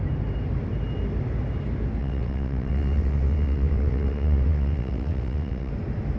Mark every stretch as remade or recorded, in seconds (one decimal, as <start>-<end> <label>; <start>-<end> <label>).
0.0-2.0 recorded; 2.0-5.7 remade; 5.7-6.2 recorded